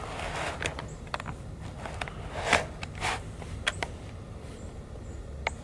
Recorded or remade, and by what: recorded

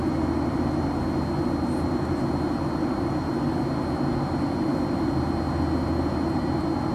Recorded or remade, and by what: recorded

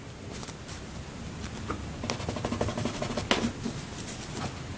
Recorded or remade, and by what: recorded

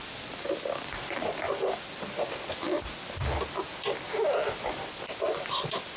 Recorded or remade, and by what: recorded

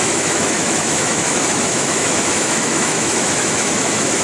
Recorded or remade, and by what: remade, autoencoder, DAC-VAE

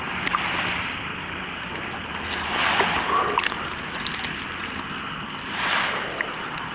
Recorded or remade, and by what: recorded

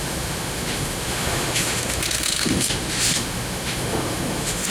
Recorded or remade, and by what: remade, autoencoder, DAC-VAE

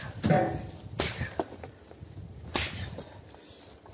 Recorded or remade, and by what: recorded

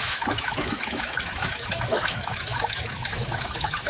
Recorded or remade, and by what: remade, autoencoder, DAC-VAE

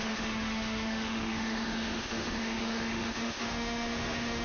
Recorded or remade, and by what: remade, autoencoder, DAC-VAE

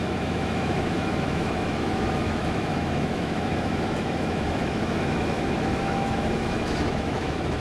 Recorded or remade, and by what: remade, autoencoder, DAC-VAE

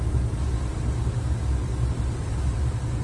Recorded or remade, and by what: recorded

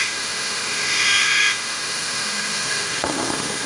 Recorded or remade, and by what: remade, autoencoder, DAC-VAE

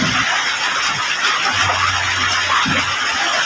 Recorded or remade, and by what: recorded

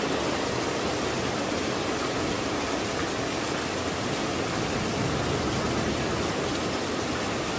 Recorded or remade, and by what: recorded